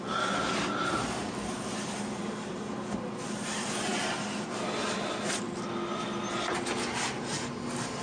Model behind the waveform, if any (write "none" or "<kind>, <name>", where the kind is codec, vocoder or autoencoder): none